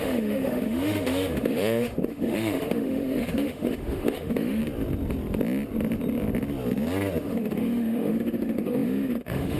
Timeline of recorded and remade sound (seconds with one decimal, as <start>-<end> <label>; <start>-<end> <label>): 0.0-4.6 remade; 4.6-7.2 recorded; 7.2-9.6 remade